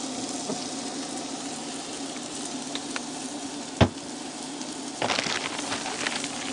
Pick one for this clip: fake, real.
real